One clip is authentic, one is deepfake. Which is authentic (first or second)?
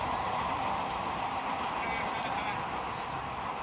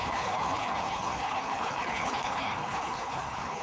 first